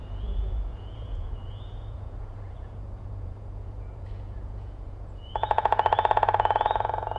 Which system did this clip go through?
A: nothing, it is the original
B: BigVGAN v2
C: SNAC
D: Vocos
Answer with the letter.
D